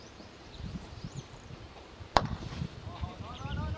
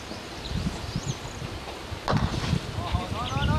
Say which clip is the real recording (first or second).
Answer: second